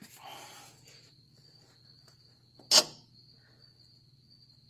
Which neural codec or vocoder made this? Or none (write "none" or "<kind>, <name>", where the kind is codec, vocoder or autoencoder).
none